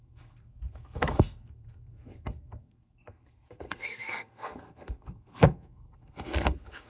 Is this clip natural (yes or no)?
no